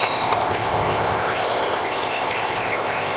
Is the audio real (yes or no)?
no